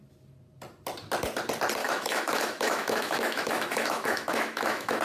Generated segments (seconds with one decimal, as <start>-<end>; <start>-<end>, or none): 1.8-5.0